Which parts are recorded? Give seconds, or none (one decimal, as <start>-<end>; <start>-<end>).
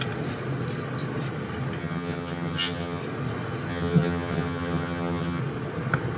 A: 0.0-1.8; 3.0-3.7; 5.4-6.2